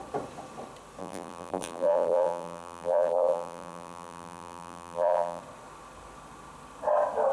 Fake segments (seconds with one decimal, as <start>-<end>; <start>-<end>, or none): 1.0-5.4